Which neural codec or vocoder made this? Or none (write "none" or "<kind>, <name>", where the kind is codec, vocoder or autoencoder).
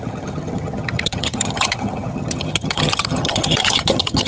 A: vocoder, HiFi-GAN